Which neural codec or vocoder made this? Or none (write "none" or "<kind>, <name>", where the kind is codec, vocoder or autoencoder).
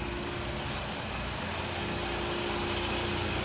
none